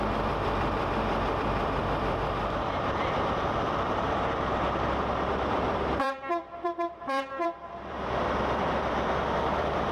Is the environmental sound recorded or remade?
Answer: remade